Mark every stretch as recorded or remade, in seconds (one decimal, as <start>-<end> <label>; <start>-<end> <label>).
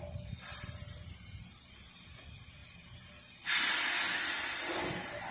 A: 0.0-5.3 recorded